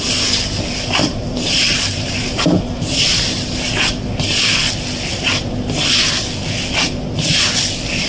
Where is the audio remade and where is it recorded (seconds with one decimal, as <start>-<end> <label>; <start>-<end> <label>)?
0.0-1.0 recorded; 1.0-3.9 remade; 3.9-5.1 recorded; 5.1-6.1 remade; 6.1-8.1 recorded